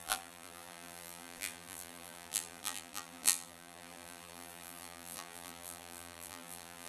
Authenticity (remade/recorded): remade